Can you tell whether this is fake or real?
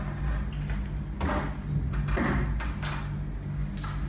real